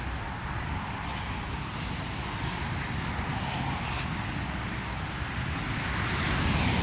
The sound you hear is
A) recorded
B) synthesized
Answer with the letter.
A